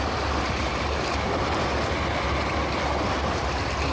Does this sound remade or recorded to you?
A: recorded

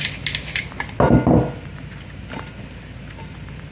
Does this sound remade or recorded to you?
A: recorded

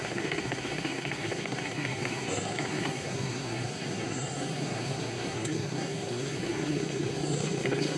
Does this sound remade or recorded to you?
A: remade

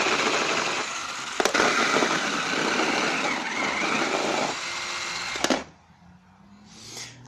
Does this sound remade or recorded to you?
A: recorded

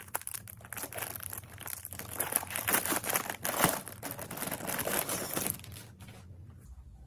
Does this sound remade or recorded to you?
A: recorded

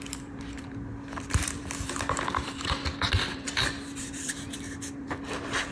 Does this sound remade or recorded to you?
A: remade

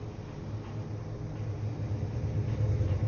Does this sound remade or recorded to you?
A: recorded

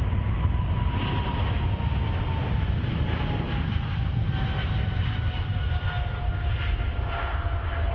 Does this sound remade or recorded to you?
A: recorded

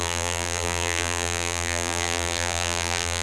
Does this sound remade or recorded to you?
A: remade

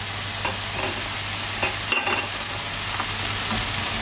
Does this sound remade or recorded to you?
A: recorded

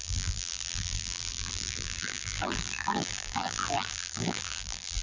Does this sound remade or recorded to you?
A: remade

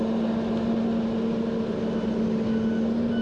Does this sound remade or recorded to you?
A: recorded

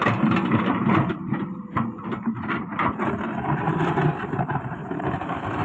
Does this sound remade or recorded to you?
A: remade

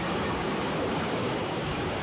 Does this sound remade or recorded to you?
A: remade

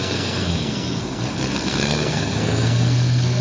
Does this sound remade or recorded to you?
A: remade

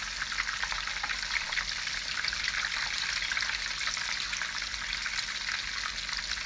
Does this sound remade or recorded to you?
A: recorded